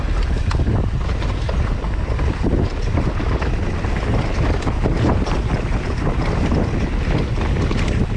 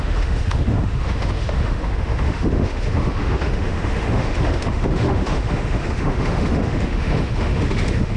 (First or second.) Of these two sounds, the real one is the first